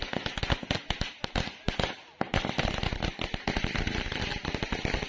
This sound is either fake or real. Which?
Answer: real